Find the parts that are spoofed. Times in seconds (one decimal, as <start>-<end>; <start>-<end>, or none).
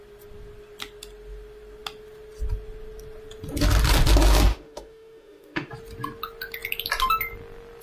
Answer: 4.5-5.7